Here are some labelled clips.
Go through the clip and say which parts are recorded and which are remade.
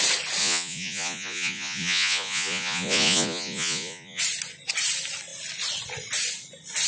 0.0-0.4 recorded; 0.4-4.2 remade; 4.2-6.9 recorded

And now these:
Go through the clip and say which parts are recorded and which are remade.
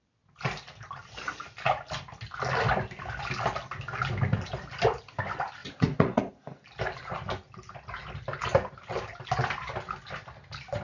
0.0-5.6 recorded; 5.6-6.2 remade; 6.2-10.8 recorded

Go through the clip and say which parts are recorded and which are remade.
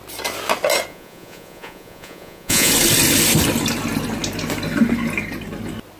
0.0-0.9 recorded; 0.9-2.7 remade; 2.7-6.0 recorded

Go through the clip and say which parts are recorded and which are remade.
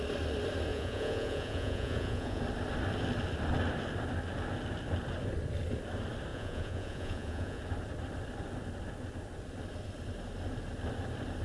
0.0-0.7 recorded; 0.7-2.4 remade; 2.4-6.3 recorded; 6.3-7.6 remade; 7.6-11.4 recorded